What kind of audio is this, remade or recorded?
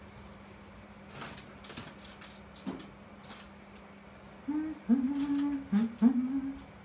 recorded